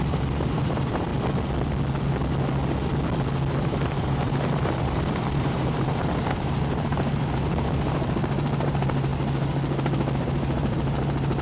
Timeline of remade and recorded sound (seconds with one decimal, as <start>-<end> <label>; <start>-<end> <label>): 0.0-1.1 remade; 1.1-3.6 recorded; 3.6-9.1 remade; 9.1-10.2 recorded; 10.2-11.4 remade